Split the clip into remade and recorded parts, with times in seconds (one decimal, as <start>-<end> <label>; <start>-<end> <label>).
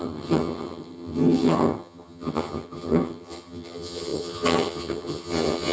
0.0-5.7 remade